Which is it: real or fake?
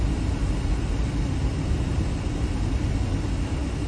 real